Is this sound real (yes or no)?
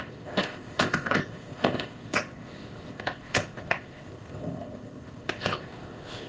no